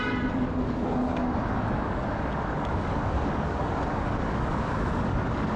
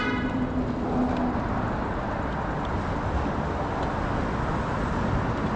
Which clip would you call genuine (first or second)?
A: second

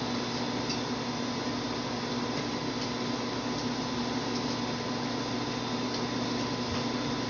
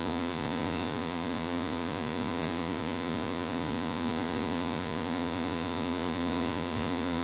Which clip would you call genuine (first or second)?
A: first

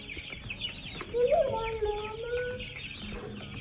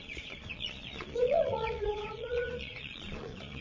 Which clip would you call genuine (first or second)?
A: first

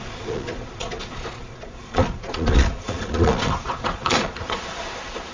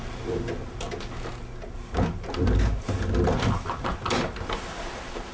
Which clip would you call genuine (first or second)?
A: second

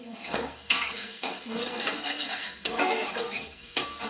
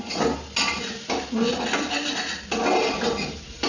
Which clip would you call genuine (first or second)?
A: second